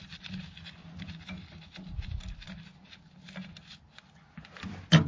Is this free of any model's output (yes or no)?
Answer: yes